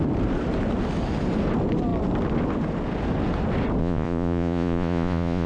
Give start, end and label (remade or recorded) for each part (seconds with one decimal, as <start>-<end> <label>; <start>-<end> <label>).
0.0-3.8 recorded; 3.8-5.5 remade